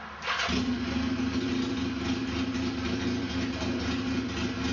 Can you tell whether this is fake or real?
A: real